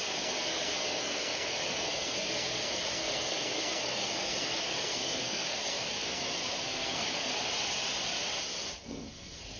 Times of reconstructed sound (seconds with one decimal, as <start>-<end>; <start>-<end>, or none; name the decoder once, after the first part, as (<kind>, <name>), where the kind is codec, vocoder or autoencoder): 0.0-7.3 (codec, SNAC); 8.8-9.6